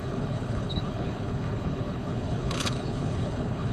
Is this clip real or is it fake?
fake